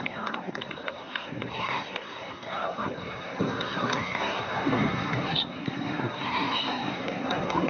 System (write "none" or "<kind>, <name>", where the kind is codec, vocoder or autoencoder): codec, SNAC